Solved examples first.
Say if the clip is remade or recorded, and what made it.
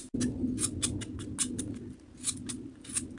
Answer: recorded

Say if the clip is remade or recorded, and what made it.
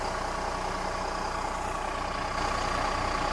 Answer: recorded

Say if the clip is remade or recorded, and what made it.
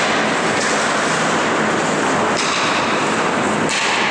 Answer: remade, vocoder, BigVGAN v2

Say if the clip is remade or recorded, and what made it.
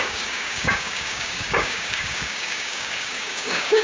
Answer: remade, codec, DAC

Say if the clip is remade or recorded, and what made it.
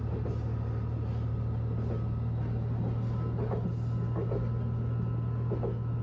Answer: recorded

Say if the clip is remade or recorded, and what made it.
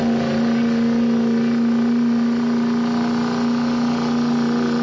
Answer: recorded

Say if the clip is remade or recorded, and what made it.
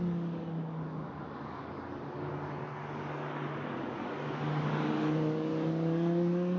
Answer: remade, codec, DAC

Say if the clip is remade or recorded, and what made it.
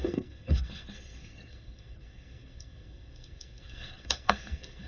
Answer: remade, codec, SNAC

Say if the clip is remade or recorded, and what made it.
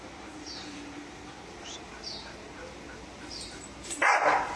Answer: remade, vocoder, BigVGAN v2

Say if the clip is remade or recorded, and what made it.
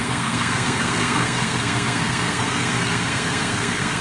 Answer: remade, codec, SNAC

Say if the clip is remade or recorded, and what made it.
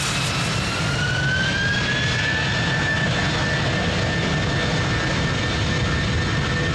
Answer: recorded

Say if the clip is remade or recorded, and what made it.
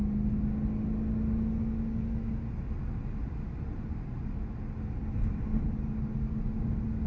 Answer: recorded